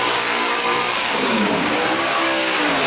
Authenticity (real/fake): fake